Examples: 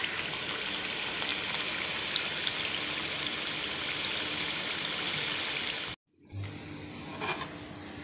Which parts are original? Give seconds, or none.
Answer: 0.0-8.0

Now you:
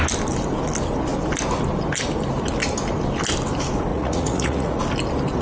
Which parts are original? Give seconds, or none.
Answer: 0.0-3.9; 4.8-5.4

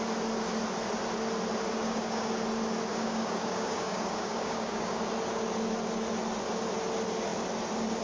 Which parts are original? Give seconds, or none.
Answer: 0.0-1.8; 2.3-2.9; 5.0-8.0

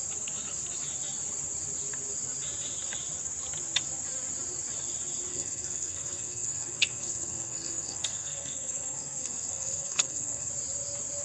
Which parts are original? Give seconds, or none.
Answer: 0.0-5.3; 10.5-11.2

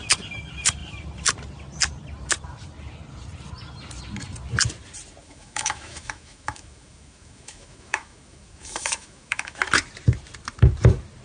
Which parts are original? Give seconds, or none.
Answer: 0.0-5.2; 9.6-11.2

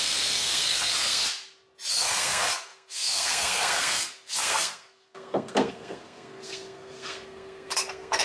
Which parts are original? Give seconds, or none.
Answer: 1.2-1.9

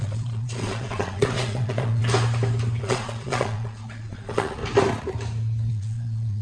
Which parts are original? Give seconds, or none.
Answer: 2.0-2.8; 4.6-5.7